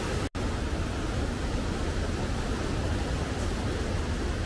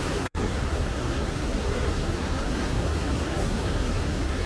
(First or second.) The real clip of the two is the first